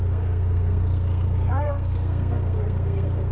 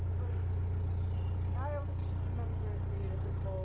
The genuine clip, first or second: second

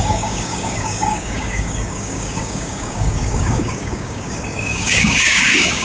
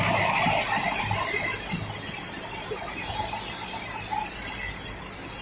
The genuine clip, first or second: second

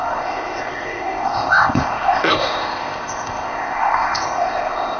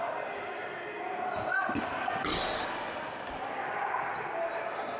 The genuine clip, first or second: second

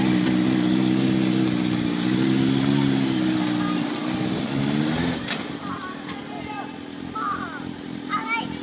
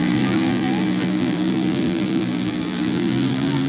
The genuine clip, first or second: first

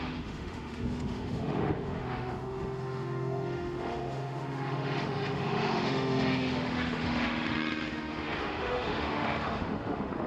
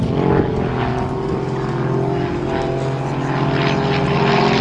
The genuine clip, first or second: second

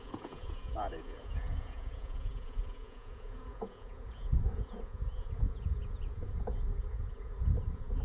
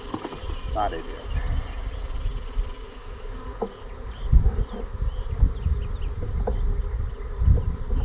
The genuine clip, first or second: second